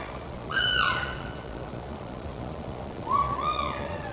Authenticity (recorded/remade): remade